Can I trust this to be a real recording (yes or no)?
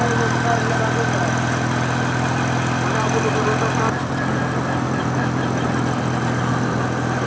yes